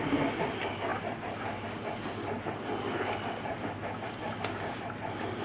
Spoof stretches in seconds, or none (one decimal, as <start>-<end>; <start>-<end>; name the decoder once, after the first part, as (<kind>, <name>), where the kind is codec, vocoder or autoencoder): none